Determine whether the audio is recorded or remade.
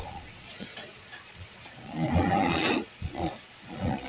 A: remade